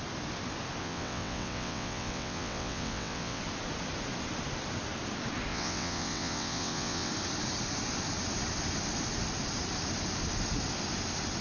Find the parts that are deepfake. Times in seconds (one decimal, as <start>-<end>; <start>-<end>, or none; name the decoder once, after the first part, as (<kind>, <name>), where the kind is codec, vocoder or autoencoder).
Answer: 0.8-3.4 (vocoder, WaveNeXt); 5.5-7.1